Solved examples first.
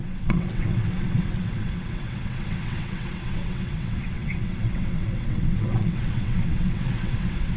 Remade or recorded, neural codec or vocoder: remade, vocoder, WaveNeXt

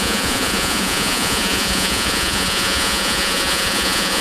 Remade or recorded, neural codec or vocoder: remade, vocoder, Vocos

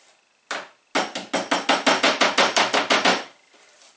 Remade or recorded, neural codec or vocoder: recorded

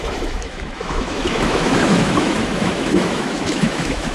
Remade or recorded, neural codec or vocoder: remade, autoencoder, DAC-VAE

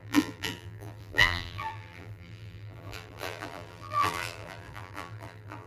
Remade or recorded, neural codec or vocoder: remade, vocoder, BigVGAN v2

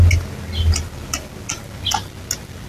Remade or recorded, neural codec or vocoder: recorded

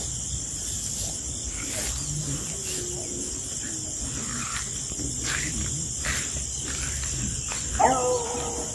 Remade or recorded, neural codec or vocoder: recorded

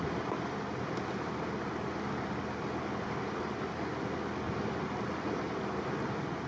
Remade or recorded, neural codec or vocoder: recorded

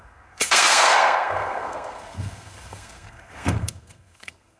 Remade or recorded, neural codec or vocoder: remade, codec, SNAC